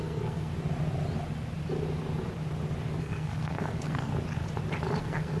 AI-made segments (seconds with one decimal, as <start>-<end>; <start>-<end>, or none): 0.0-0.5; 3.0-4.1; 5.0-5.4